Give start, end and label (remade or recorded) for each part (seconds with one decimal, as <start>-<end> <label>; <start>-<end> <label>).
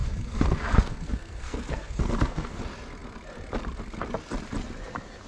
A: 0.0-2.6 remade; 2.6-5.3 recorded